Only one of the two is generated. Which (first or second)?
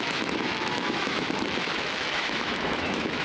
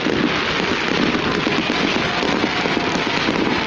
first